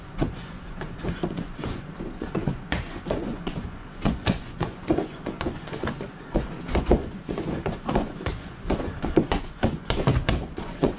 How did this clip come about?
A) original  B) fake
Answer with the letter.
B